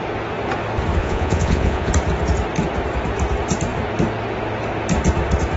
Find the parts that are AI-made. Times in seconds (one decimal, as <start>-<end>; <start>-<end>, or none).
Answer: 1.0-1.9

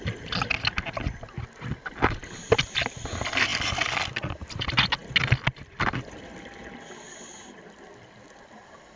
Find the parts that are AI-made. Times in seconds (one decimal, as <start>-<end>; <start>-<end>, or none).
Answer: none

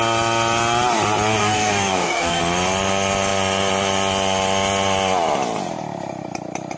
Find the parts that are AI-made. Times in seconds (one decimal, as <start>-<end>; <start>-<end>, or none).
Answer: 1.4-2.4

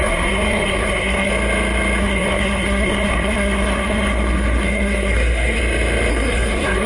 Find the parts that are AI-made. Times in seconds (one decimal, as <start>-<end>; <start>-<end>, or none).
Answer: 0.0-1.3; 2.0-5.6; 6.1-6.9